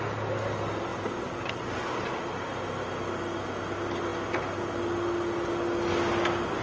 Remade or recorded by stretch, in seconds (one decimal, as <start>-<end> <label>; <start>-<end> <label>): 0.0-6.6 recorded